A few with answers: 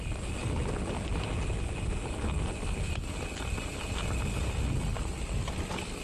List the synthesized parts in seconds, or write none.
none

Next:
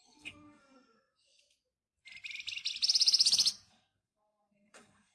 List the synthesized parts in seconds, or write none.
0.0-1.4 (codec, SNAC); 3.7-5.1

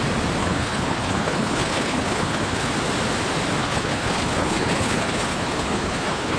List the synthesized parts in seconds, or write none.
0.4-2.7 (codec, HILCodec); 3.6-6.4

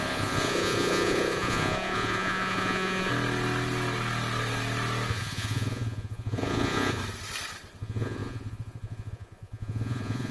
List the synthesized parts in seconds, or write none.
0.0-3.1 (vocoder, Vocos); 5.1-7.0; 7.8-10.3

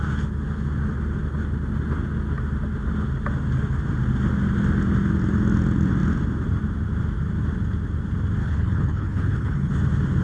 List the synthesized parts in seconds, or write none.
8.4-9.7 (codec, HILCodec)